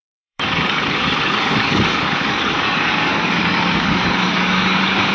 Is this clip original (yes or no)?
no